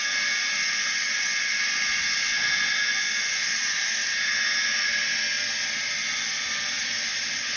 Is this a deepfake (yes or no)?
no